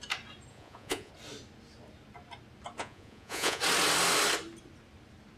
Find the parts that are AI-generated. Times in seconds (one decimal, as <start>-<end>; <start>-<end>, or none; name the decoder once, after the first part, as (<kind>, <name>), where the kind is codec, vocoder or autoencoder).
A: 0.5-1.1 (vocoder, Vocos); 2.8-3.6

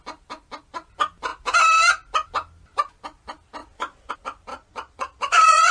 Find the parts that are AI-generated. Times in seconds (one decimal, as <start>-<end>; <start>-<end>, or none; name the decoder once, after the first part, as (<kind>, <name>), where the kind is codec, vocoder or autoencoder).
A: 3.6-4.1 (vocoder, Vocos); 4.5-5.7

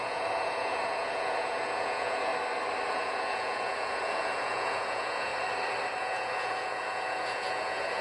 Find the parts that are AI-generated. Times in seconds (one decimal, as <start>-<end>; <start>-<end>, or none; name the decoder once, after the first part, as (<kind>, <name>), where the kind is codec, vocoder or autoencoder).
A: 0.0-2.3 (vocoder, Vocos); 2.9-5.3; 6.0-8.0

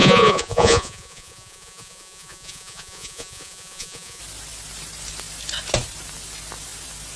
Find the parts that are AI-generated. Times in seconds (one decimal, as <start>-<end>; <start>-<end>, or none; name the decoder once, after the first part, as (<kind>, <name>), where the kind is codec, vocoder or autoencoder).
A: 0.0-4.2 (vocoder, Vocos)

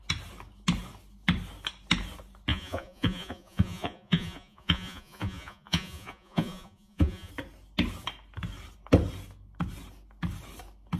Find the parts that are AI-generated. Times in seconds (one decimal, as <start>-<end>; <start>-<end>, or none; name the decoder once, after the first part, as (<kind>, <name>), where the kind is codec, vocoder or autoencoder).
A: 2.5-7.3 (vocoder, Vocos)

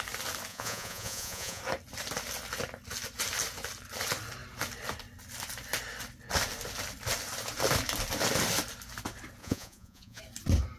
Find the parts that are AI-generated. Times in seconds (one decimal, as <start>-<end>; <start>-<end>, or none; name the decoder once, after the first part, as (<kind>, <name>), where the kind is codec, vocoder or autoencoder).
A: 0.5-1.6 (vocoder, Vocos); 9.4-10.2